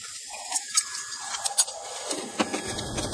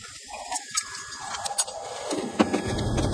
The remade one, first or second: first